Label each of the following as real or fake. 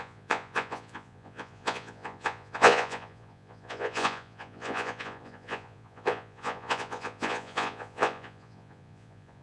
fake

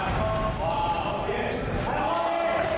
real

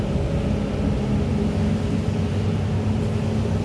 real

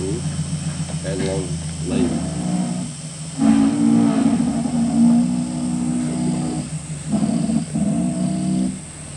real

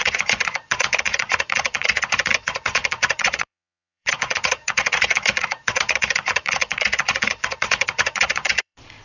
fake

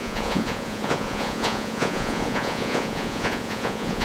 fake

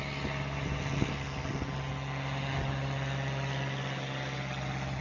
real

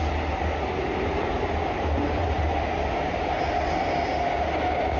real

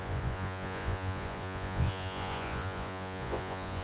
fake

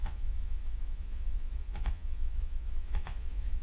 fake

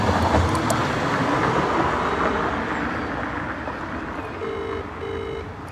real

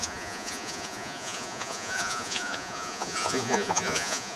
fake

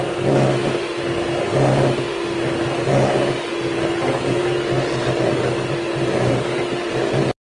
real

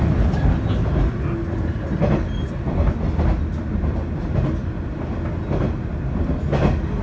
real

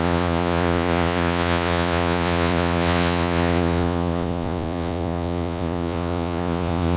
fake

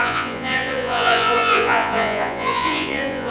fake